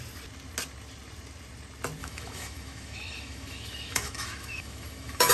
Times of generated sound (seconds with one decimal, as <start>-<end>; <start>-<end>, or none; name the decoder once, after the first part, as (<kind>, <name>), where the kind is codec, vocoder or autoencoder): 2.0-5.3 (autoencoder, DAC-VAE)